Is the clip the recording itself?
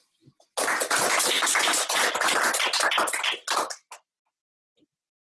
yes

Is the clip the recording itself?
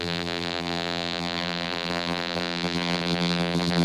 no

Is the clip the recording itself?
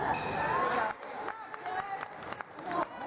yes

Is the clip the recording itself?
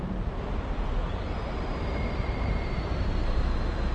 no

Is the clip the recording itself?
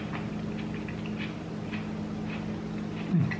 yes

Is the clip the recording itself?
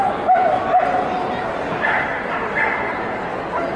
yes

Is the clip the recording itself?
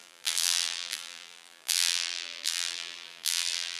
no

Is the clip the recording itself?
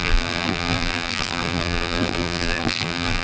no